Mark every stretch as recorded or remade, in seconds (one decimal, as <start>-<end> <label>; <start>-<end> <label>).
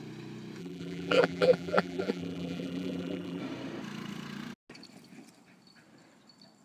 0.0-0.6 recorded; 0.6-3.4 remade; 3.4-6.6 recorded